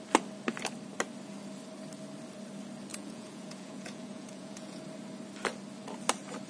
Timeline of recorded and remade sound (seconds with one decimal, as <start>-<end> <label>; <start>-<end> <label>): 0.0-2.9 recorded; 2.9-4.8 remade; 4.8-6.5 recorded